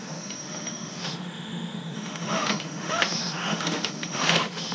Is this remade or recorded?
remade